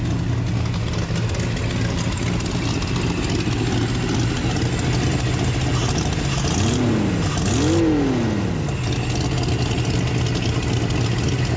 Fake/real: real